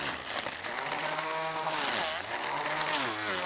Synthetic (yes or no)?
no